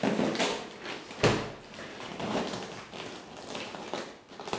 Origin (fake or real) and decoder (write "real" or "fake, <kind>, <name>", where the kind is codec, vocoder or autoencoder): real